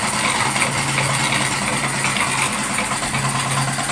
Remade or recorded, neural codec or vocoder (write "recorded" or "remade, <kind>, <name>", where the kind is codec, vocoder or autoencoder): recorded